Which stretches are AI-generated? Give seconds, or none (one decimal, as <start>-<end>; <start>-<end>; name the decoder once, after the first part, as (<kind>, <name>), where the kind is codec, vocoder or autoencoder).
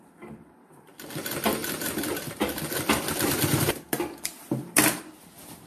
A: 1.6-5.0 (vocoder, BigVGAN v2)